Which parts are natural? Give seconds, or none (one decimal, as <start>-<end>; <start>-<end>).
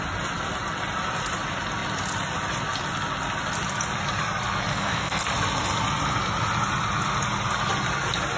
0.0-4.7; 5.2-8.4